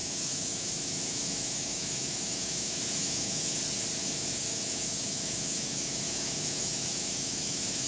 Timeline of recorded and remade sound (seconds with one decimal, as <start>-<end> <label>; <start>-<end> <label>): 0.0-3.6 remade; 3.6-4.0 recorded; 4.0-7.9 remade